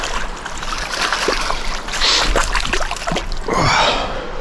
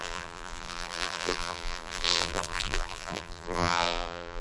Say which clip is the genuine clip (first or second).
first